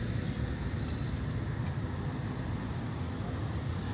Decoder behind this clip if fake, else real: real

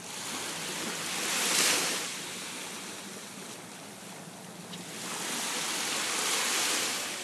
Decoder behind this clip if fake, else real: real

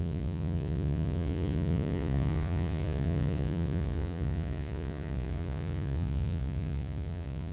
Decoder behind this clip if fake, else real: fake, vocoder, Vocos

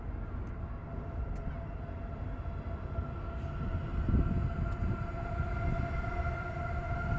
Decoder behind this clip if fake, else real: real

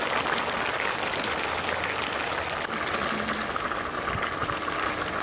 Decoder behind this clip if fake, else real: real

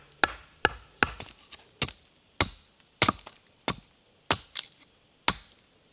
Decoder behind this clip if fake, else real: real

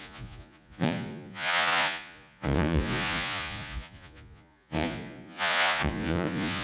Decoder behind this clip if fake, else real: fake, vocoder, Vocos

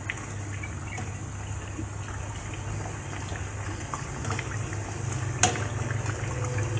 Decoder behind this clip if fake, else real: real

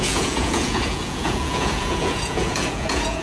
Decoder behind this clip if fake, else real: fake, vocoder, Vocos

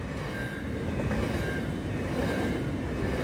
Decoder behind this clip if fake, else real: real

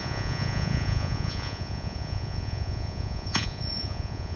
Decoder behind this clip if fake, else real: fake, vocoder, Vocos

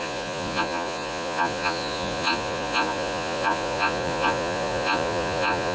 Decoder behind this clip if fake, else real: fake, vocoder, Vocos